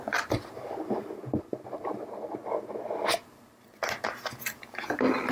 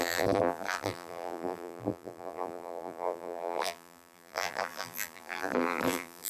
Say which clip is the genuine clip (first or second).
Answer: first